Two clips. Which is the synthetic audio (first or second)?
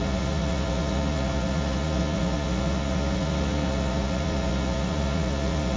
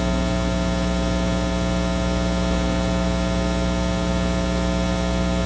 first